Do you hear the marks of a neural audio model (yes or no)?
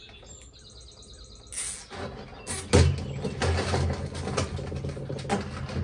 no